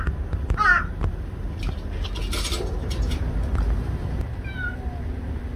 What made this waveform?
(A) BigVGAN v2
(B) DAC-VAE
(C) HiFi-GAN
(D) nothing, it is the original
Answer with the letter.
D